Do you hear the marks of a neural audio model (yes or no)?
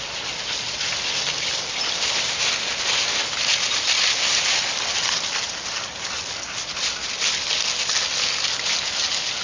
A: no